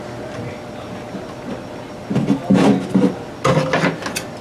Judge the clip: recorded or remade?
recorded